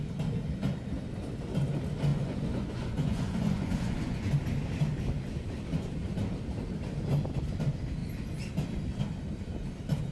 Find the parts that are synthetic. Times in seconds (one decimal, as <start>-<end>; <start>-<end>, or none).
2.1-4.3